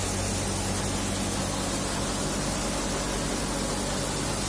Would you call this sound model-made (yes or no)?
no